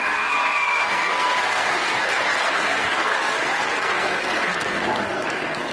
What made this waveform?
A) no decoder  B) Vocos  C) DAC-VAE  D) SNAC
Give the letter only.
D